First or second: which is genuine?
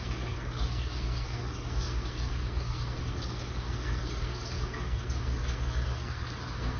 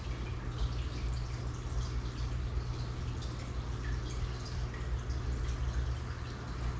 second